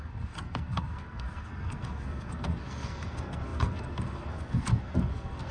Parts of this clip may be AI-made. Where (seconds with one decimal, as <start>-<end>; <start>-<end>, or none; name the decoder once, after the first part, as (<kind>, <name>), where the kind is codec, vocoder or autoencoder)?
0.0-5.5 (codec, SNAC)